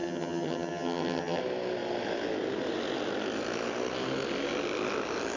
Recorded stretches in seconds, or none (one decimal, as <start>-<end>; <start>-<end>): 1.4-5.4